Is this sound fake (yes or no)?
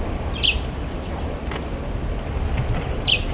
no